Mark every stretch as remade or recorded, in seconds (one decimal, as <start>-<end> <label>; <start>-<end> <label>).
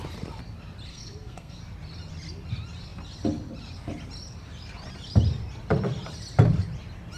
0.0-0.9 recorded; 0.9-1.6 remade; 1.6-7.2 recorded